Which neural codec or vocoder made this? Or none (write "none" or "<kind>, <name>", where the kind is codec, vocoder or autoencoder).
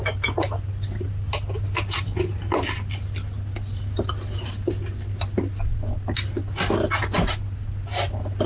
none